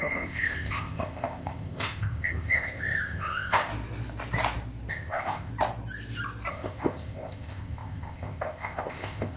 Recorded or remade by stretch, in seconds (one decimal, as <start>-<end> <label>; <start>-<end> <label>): 0.0-3.7 remade; 3.7-4.9 recorded; 4.9-5.5 remade; 5.5-6.5 recorded; 6.5-9.4 remade